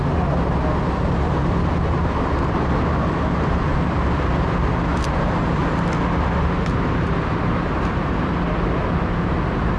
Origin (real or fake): real